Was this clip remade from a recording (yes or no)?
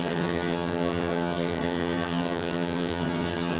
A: yes